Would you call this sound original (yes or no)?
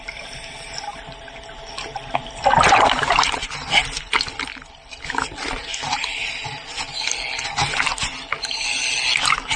yes